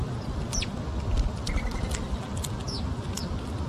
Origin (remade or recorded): recorded